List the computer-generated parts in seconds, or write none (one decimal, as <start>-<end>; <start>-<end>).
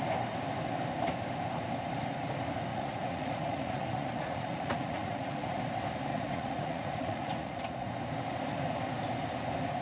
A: 2.7-5.6; 6.1-7.9